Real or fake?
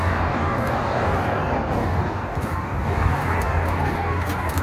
fake